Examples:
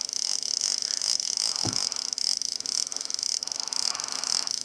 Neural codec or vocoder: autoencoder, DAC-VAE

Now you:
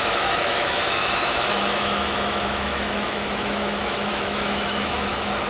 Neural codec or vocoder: autoencoder, DAC-VAE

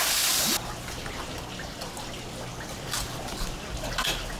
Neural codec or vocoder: none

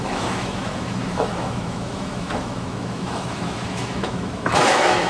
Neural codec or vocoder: autoencoder, DAC-VAE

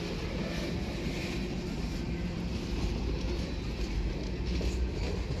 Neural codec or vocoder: none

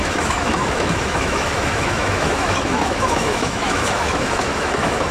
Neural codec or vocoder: autoencoder, DAC-VAE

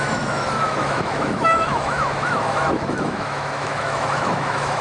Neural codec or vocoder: autoencoder, DAC-VAE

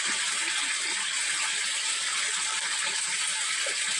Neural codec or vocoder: none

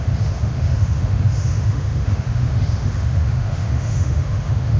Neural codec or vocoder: autoencoder, DAC-VAE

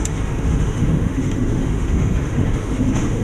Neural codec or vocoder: autoencoder, DAC-VAE